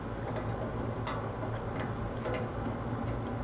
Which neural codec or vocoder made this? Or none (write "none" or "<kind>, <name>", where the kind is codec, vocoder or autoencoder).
none